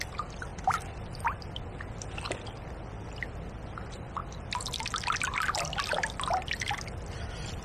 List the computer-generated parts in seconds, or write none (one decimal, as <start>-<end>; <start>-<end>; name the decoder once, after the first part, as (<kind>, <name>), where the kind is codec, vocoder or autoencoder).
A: none